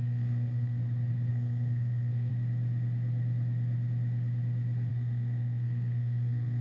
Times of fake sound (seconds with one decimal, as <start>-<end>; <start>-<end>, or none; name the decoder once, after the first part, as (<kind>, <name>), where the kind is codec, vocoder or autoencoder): 0.0-0.8 (codec, SNAC); 1.3-2.3; 4.9-6.6